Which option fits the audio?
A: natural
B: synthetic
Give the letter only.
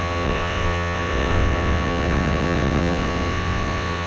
B